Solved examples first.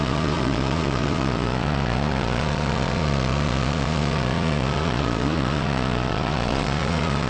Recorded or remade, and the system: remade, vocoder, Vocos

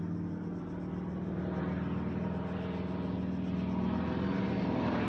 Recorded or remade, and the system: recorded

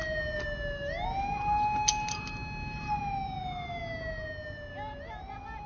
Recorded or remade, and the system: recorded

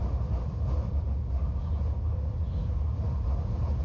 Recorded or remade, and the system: recorded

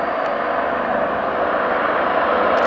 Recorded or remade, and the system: recorded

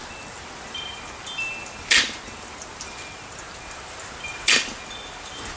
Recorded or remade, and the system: recorded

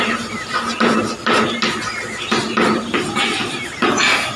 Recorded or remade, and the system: recorded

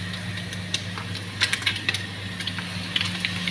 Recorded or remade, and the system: recorded